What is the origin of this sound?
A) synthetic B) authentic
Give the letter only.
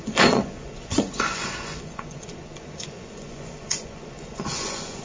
A